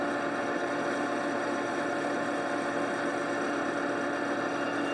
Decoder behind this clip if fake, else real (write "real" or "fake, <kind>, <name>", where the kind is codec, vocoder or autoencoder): real